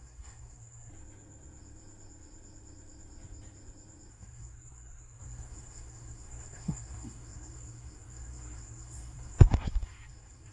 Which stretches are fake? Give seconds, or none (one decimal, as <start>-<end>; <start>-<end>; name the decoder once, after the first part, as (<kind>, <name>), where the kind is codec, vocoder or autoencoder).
0.0-0.9 (codec, SNAC); 4.1-10.5